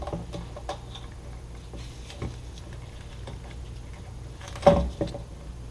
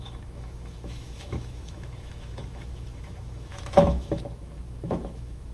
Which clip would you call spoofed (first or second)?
second